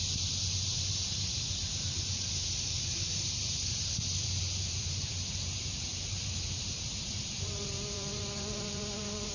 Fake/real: fake